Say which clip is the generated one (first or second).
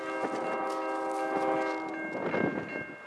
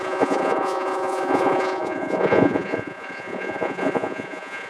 second